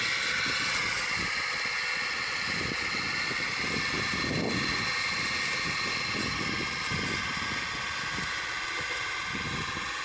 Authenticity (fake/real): real